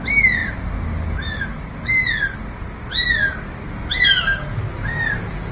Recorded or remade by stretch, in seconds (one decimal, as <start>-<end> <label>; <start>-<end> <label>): 0.0-5.5 recorded